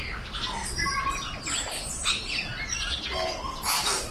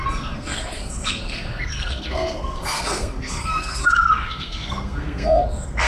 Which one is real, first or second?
first